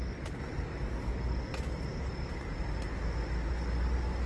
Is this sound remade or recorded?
recorded